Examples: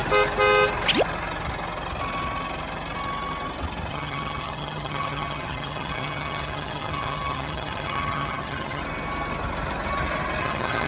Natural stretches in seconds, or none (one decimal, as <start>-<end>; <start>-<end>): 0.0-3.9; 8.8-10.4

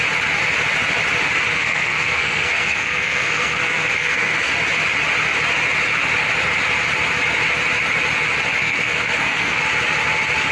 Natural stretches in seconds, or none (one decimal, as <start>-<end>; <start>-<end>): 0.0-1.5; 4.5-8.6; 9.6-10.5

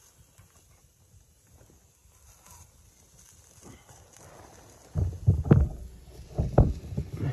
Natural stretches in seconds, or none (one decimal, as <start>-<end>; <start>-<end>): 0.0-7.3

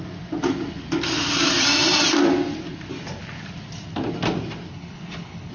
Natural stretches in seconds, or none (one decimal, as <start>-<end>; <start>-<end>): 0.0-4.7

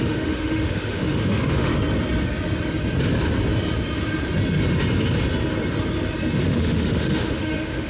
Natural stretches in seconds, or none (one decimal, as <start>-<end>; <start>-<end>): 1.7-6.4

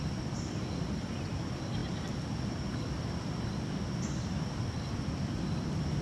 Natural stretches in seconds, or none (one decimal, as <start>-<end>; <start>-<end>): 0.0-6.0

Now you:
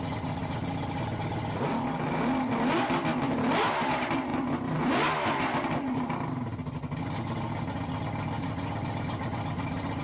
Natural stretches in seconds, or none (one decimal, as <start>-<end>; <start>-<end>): 0.0-10.0

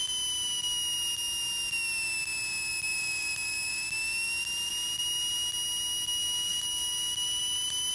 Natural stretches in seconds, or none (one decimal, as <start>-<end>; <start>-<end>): 0.0-2.7; 4.7-6.5